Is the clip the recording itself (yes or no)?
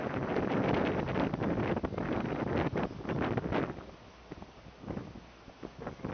yes